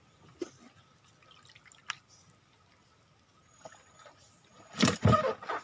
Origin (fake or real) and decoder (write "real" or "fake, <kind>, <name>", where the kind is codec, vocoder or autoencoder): real